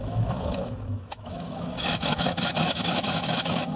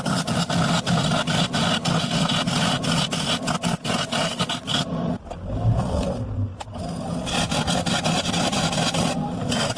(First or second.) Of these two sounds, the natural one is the second